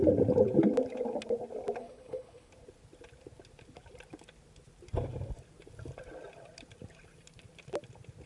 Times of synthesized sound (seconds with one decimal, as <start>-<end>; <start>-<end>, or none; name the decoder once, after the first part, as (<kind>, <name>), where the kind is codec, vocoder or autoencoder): 1.8-2.5 (codec, HILCodec)